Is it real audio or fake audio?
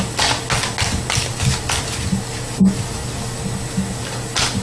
real